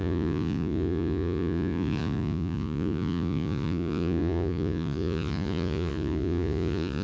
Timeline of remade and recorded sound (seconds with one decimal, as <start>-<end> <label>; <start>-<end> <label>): 0.0-7.0 remade